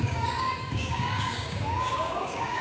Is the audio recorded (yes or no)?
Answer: no